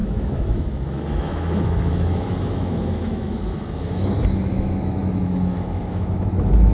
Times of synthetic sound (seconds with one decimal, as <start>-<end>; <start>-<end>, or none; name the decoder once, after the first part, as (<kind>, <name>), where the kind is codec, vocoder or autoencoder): 0.0-6.7 (autoencoder, DAC-VAE)